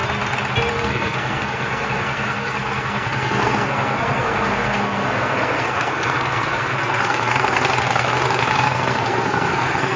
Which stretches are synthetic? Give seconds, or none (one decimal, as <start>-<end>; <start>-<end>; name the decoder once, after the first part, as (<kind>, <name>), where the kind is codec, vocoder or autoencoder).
0.7-10.0 (codec, SNAC)